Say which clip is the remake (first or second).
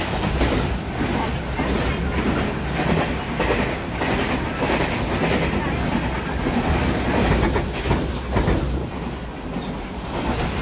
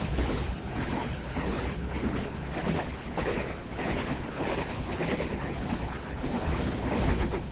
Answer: second